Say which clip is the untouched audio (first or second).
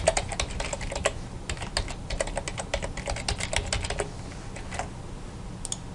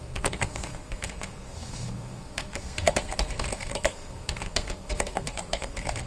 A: first